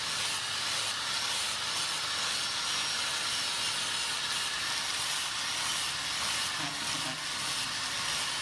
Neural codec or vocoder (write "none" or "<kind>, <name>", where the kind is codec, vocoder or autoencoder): none